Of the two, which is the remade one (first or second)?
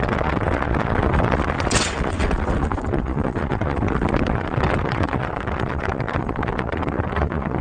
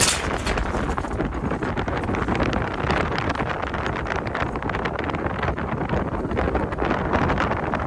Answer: first